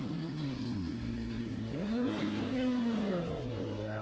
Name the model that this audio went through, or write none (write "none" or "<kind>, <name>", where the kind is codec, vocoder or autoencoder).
codec, SNAC